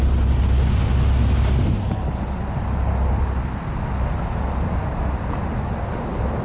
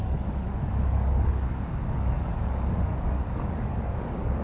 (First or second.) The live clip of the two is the first